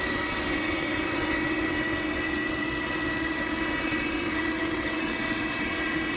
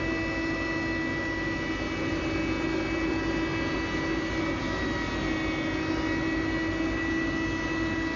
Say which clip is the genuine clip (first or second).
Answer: second